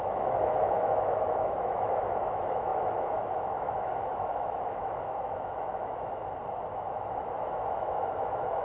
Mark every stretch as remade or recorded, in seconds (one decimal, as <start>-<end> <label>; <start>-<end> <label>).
0.0-6.2 remade; 6.2-6.7 recorded; 6.7-8.6 remade